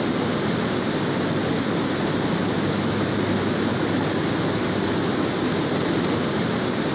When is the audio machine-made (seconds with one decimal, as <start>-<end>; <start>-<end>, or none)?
none